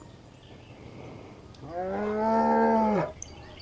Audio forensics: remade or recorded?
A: recorded